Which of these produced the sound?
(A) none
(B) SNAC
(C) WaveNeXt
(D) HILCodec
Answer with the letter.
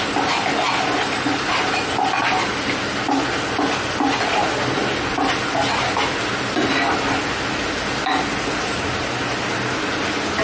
A